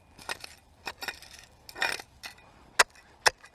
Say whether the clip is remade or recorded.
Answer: recorded